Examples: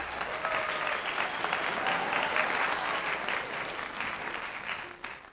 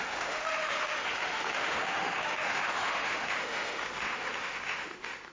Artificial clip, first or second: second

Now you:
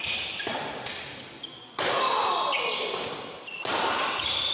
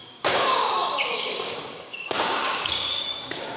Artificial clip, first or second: second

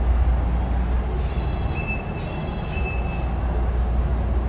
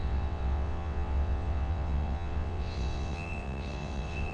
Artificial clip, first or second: second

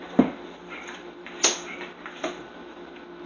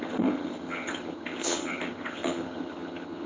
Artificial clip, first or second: second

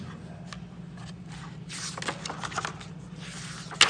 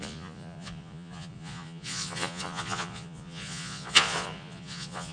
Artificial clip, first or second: second